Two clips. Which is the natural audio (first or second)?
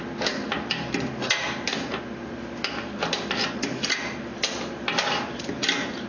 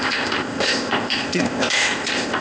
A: first